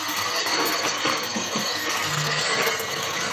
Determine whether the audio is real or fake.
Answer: fake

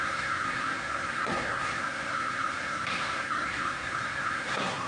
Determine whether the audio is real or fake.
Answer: fake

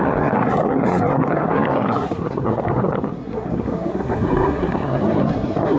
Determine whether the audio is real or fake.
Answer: fake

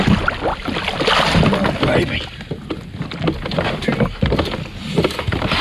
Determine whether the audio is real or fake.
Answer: real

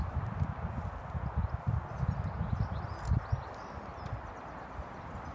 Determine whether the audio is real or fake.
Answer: real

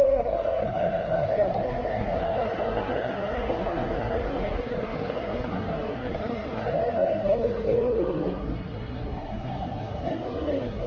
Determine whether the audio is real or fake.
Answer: fake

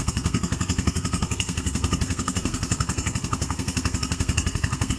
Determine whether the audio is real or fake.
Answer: fake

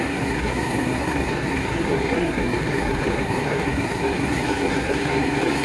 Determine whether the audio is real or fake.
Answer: fake